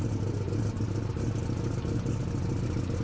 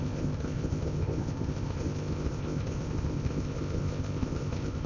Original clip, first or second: first